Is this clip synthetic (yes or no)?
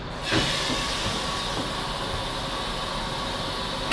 no